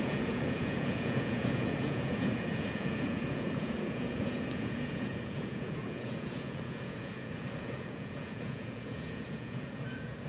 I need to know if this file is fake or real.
fake